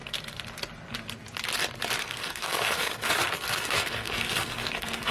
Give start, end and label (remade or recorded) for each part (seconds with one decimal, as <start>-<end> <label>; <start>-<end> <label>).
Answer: 0.0-2.0 recorded; 2.0-5.1 remade